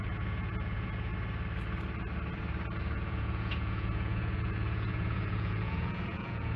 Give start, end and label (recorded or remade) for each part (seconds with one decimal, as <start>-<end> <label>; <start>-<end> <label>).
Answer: 0.0-1.1 remade; 1.1-2.8 recorded; 2.8-6.6 remade